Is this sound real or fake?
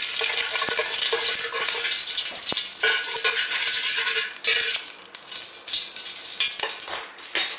real